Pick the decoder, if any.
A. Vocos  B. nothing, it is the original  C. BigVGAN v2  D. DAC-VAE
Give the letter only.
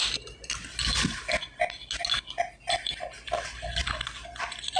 B